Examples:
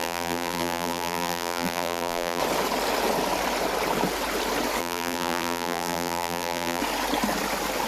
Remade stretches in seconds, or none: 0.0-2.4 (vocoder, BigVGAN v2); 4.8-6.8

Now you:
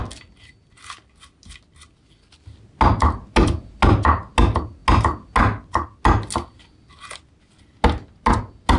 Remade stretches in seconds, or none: none

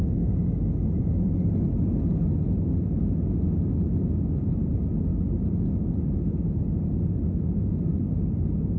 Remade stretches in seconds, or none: none

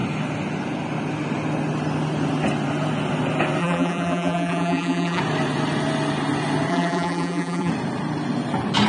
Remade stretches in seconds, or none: 3.6-5.2 (vocoder, BigVGAN v2); 6.7-7.7

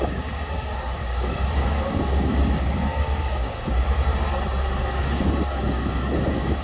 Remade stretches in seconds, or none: 0.0-4.1 (codec, DAC); 4.8-6.6

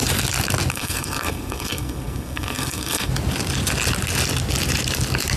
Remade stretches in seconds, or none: 0.7-3.1 (codec, SNAC)